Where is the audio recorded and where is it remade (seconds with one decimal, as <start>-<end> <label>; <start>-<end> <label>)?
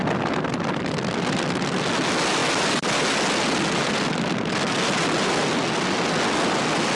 0.0-6.9 recorded